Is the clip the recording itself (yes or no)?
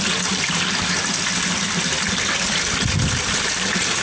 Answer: yes